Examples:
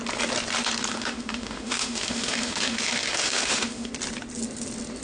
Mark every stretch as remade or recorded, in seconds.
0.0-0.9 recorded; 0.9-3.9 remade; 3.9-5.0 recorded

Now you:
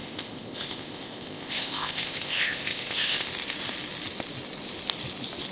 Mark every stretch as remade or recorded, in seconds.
0.0-3.3 remade; 3.3-5.5 recorded

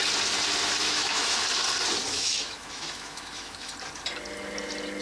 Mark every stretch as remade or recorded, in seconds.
0.0-0.8 recorded; 0.8-1.4 remade; 1.4-2.1 recorded; 2.1-3.7 remade; 3.7-5.0 recorded

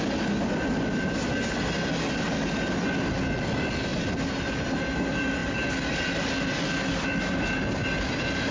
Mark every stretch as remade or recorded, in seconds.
0.0-8.5 recorded

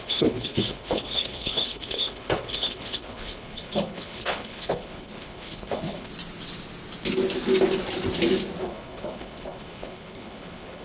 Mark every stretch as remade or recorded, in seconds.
0.0-6.1 remade; 6.1-8.6 recorded; 8.6-10.8 remade

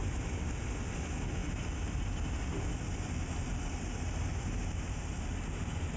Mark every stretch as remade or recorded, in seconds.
0.0-0.6 remade; 0.6-6.0 recorded

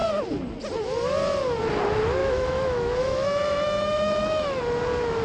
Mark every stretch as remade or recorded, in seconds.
0.0-2.2 recorded; 2.2-4.6 remade; 4.6-5.2 recorded